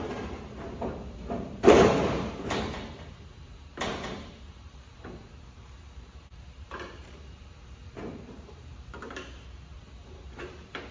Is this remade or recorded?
remade